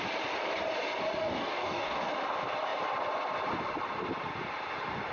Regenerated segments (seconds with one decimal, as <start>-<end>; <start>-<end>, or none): 1.2-2.1